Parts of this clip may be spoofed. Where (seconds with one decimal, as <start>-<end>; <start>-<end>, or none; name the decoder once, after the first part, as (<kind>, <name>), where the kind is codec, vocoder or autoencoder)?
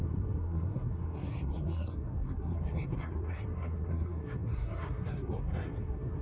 0.0-6.2 (codec, SNAC)